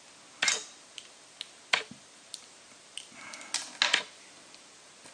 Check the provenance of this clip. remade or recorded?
recorded